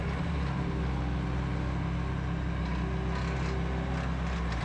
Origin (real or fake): real